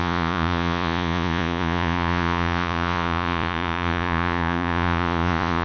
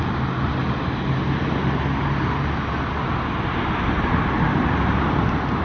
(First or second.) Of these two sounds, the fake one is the first